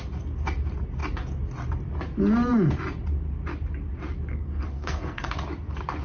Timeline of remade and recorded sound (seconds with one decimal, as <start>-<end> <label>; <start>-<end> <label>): 0.0-4.3 recorded; 4.3-5.3 remade; 5.3-6.0 recorded